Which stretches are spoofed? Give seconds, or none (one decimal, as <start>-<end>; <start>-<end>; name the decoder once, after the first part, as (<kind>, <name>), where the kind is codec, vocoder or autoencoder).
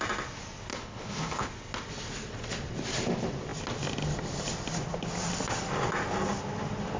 0.7-1.5 (codec, HILCodec)